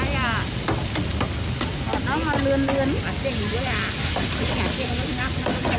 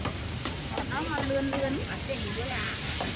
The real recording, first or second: first